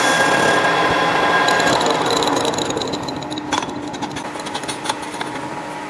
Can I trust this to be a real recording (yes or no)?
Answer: yes